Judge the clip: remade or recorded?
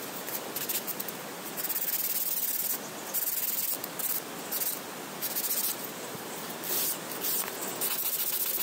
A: recorded